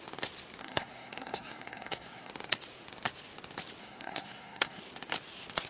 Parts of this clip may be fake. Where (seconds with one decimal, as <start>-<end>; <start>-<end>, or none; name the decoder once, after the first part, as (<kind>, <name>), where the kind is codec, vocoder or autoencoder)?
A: 0.6-2.3 (codec, SNAC); 3.8-4.8